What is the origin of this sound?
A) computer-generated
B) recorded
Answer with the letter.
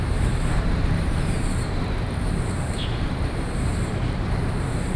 A